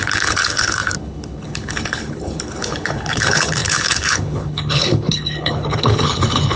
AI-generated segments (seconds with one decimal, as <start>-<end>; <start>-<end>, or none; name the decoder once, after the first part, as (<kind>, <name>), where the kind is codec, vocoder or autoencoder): 0.0-6.6 (codec, HILCodec)